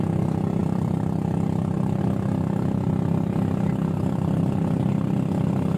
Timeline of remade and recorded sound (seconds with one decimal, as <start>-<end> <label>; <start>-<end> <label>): 0.0-0.6 recorded; 0.6-2.0 remade; 2.0-5.8 recorded